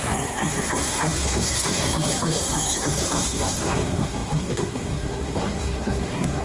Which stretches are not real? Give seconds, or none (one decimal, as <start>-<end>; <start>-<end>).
0.0-6.4